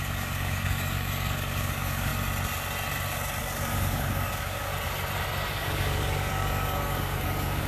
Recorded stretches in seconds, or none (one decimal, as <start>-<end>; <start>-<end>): 2.1-3.4; 4.7-5.5